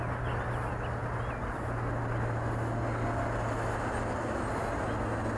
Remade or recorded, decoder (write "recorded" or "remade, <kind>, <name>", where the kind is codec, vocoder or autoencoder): recorded